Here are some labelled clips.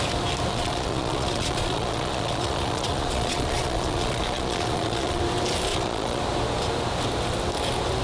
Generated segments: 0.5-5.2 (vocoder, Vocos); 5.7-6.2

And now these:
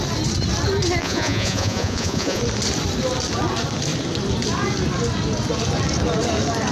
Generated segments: 1.0-2.4 (vocoder, Vocos)

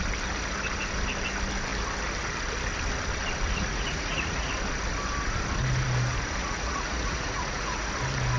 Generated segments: 3.6-4.5 (vocoder, Vocos); 6.4-7.9